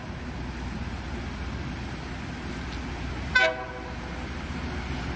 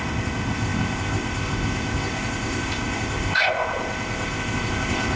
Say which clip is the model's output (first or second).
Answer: second